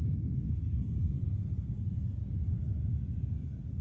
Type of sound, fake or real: real